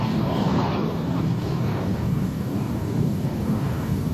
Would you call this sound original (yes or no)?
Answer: no